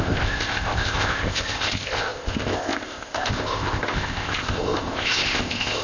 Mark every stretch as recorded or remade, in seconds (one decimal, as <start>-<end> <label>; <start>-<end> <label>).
0.0-5.8 remade